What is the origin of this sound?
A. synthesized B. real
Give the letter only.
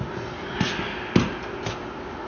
B